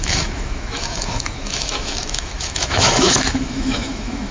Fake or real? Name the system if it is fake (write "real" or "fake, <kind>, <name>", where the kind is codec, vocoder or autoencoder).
fake, autoencoder, DAC-VAE